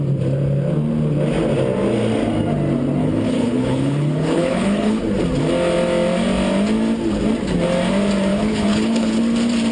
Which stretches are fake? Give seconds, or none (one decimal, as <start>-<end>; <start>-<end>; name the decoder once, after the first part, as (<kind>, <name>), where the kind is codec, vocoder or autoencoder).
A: 3.0-5.0 (codec, HILCodec); 8.3-9.2

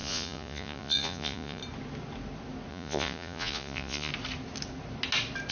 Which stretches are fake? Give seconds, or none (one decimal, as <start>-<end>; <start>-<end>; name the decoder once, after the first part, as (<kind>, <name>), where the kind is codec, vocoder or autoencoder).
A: 0.0-1.6 (vocoder, Vocos); 2.7-4.1

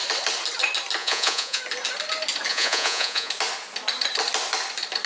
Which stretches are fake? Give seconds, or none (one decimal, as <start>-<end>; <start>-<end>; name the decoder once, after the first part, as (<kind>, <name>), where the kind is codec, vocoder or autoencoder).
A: 1.0-1.6 (vocoder, Vocos); 2.5-3.3

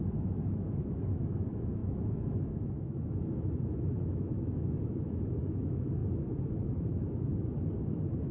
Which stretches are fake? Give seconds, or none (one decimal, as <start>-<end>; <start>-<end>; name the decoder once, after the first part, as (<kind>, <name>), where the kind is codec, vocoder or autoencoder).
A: 0.0-6.0 (autoencoder, DAC-VAE); 6.8-7.3; 7.9-8.3

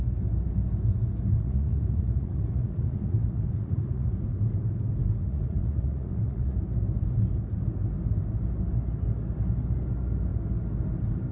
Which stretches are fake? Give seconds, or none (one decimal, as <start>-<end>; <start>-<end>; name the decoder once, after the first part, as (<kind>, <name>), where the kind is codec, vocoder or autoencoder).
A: 1.3-4.1 (vocoder, Vocos); 5.2-6.6

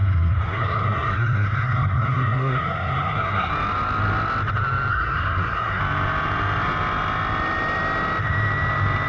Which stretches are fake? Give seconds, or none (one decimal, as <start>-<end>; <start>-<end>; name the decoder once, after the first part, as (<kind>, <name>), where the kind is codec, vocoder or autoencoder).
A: 0.0-3.5 (codec, SNAC); 4.9-5.8